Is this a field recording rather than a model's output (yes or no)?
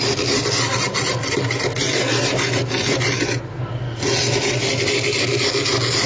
yes